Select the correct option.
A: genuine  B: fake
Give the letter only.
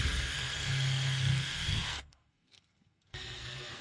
B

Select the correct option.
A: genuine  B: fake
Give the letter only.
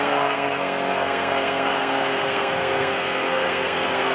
B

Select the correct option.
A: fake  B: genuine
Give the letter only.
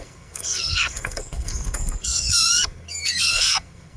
A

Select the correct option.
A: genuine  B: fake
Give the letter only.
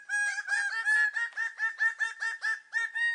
A